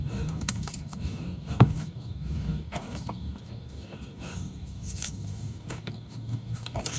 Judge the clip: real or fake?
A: fake